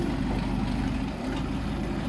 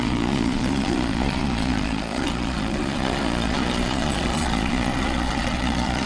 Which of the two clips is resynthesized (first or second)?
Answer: second